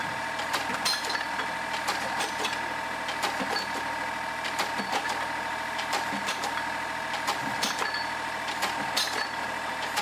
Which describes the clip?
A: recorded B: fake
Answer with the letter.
A